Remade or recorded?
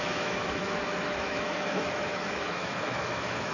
remade